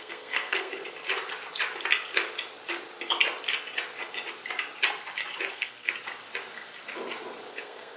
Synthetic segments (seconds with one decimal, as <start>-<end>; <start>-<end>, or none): 0.0-0.7; 5.5-5.9; 7.5-8.0